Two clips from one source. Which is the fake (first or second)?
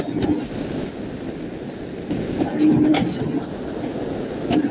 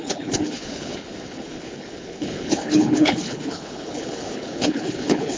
second